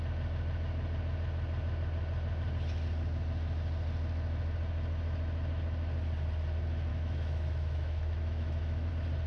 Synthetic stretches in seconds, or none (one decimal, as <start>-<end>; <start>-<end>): 6.9-8.9

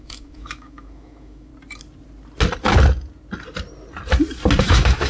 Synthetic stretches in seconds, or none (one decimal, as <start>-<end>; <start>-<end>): 0.0-1.5; 4.6-5.1

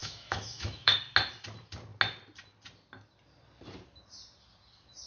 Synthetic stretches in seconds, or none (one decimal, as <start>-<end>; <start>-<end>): 0.0-1.0